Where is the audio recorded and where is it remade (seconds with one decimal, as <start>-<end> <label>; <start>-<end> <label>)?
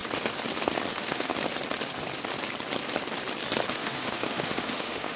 0.0-0.9 recorded; 0.9-1.3 remade; 1.3-3.7 recorded; 3.7-5.2 remade